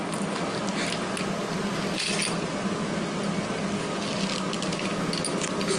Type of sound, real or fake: real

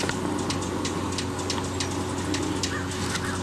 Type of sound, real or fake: real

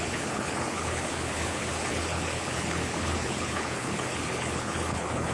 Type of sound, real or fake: fake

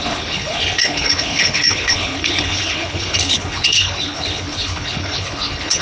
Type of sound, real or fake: fake